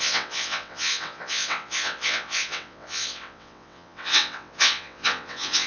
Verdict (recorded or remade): remade